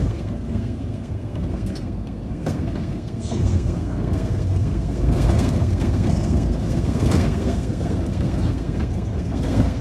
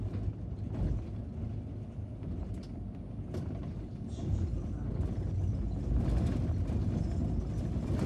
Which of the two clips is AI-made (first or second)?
first